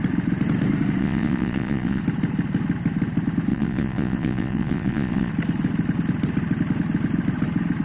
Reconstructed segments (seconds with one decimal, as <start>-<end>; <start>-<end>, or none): 1.0-2.0; 3.5-5.3